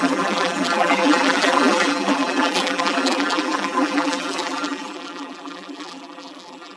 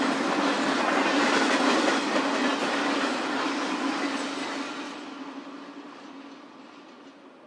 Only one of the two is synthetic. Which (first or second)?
first